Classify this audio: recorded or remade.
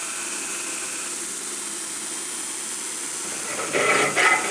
recorded